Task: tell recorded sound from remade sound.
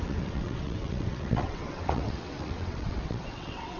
remade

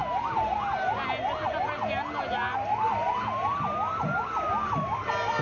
recorded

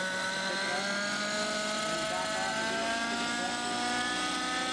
recorded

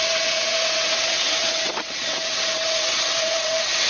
remade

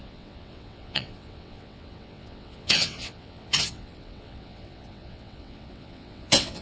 remade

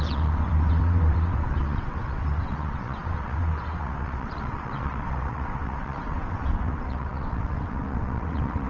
remade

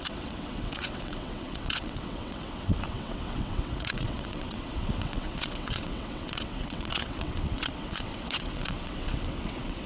remade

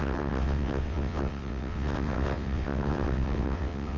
remade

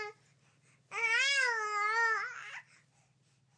recorded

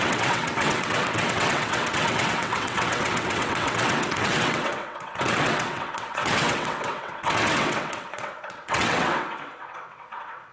remade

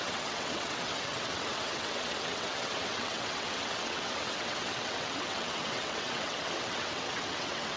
remade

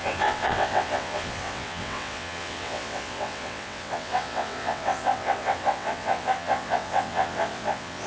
remade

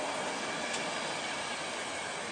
recorded